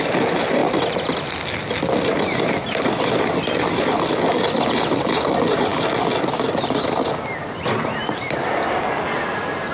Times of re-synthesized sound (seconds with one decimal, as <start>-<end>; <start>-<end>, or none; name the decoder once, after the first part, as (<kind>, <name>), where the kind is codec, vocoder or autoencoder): none